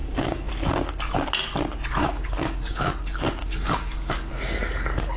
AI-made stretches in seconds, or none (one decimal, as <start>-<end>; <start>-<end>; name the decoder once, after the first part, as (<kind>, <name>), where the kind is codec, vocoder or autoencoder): 0.0-0.5 (codec, DAC); 2.0-2.9; 3.4-4.3